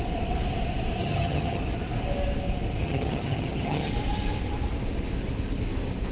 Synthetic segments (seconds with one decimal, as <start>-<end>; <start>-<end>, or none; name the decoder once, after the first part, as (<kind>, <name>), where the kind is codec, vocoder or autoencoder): 1.0-1.6 (vocoder, HiFi-GAN); 2.8-3.9